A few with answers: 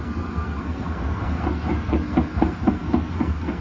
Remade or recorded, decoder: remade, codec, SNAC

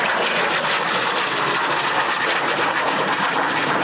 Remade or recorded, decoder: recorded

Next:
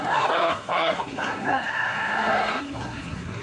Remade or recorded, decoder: remade, codec, SNAC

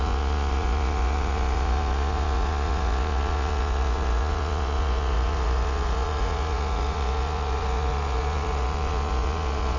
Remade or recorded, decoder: remade, vocoder, Vocos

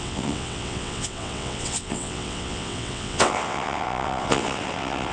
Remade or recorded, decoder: remade, vocoder, WaveNeXt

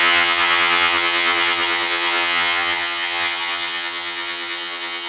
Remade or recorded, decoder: remade, vocoder, HiFi-GAN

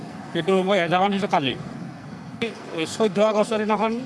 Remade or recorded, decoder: remade, codec, SNAC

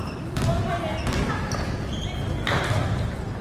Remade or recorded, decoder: recorded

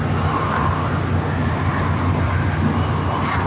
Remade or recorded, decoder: recorded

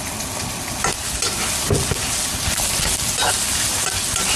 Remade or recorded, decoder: recorded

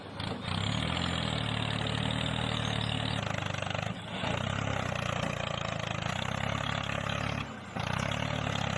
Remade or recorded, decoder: recorded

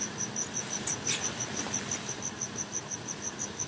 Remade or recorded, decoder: recorded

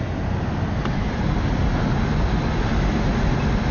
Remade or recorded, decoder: recorded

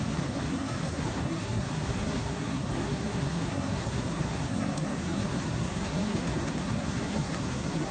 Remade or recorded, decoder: remade, codec, SNAC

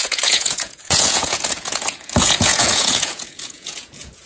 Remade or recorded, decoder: remade, vocoder, Vocos